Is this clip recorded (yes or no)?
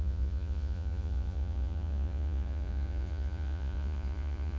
no